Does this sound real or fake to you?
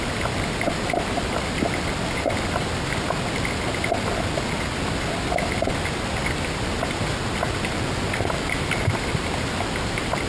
real